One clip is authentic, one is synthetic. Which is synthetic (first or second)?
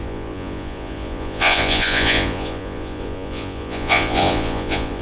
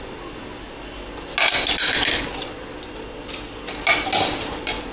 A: first